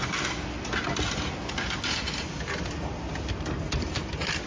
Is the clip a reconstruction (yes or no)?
no